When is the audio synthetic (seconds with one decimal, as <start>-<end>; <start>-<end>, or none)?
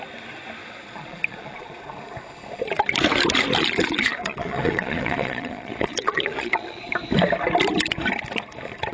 0.6-1.8; 3.6-6.8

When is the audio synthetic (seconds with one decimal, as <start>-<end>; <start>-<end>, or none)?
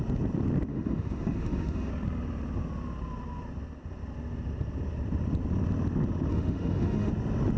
0.7-1.9; 6.3-7.1